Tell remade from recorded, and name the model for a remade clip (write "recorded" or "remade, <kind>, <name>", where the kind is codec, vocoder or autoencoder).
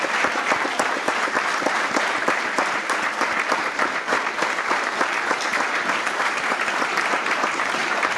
remade, vocoder, BigVGAN v2